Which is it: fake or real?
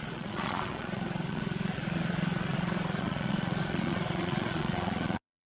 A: fake